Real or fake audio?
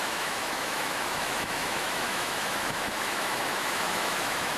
fake